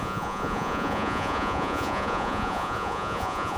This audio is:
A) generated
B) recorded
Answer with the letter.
A